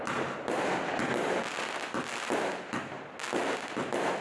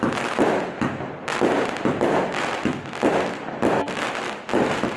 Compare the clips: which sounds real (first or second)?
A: first